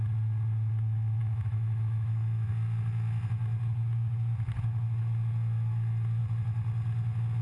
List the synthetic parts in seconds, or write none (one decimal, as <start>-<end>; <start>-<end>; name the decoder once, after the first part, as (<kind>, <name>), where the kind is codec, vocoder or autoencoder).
1.2-2.5 (autoencoder, DAC-VAE)